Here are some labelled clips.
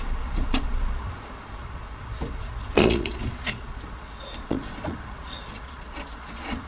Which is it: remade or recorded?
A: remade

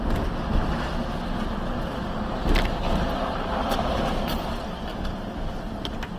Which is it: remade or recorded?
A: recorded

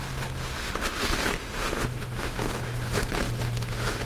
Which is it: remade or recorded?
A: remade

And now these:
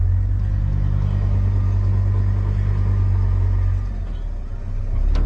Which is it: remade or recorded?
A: recorded